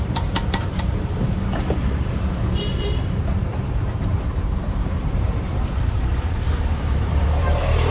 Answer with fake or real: fake